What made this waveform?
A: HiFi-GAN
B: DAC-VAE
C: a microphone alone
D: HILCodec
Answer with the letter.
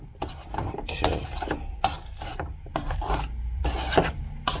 C